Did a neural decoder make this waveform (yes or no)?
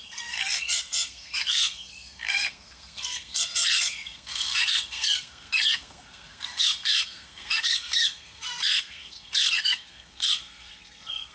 yes